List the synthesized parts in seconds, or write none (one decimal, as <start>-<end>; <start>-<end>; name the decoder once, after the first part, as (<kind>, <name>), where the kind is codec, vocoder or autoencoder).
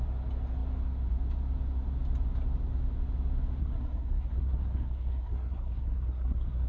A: 3.6-6.7 (codec, SNAC)